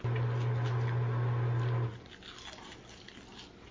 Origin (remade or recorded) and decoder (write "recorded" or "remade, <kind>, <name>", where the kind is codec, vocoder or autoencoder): recorded